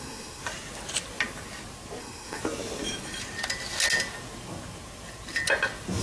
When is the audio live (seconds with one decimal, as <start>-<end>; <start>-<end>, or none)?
0.4-2.0; 2.4-6.0